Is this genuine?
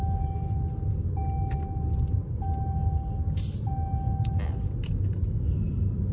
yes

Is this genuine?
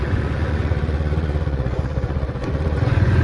no